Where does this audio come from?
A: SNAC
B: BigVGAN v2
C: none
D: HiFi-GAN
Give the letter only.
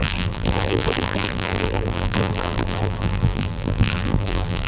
B